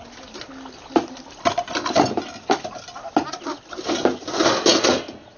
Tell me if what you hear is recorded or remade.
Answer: recorded